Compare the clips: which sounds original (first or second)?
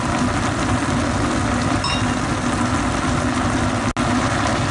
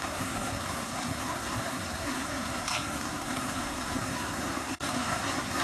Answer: first